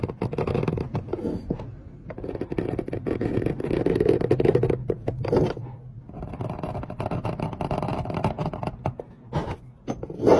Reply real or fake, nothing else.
real